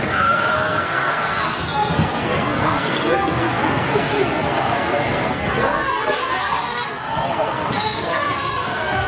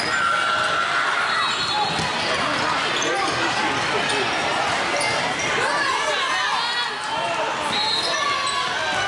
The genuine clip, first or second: second